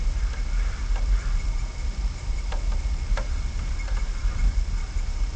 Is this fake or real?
real